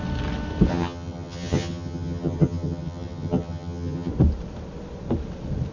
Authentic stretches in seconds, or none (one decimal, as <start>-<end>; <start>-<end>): 0.0-0.7; 4.1-5.7